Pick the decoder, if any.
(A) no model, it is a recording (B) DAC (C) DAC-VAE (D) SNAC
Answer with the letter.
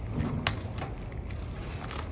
A